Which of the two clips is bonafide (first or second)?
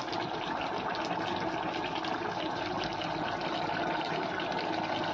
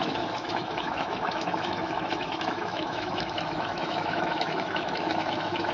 first